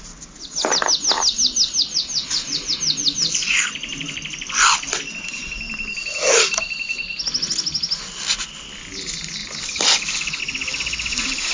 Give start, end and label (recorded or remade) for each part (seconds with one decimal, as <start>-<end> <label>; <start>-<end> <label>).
0.0-11.5 recorded